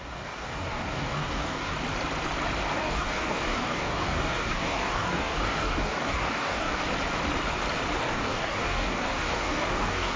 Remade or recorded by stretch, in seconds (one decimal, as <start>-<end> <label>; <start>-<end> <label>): 0.0-1.7 remade; 1.7-2.7 recorded; 2.7-6.8 remade; 6.8-8.0 recorded; 8.0-10.2 remade